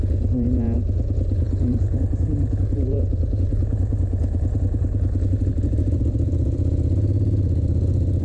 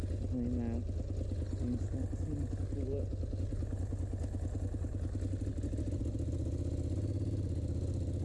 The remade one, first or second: first